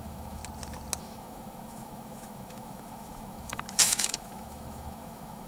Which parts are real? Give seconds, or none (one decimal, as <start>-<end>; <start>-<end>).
0.4-1.0

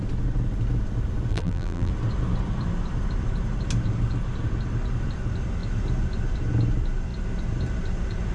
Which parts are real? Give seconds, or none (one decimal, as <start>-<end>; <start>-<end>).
0.0-1.3; 1.9-8.3

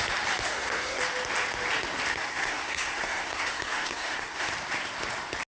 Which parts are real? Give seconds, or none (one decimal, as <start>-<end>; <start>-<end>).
0.0-0.5; 1.0-2.1; 4.5-5.5